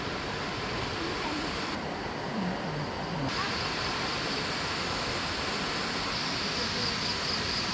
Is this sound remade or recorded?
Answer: recorded